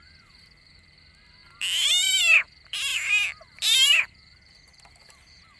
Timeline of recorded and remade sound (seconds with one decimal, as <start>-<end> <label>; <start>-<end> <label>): 0.0-5.6 remade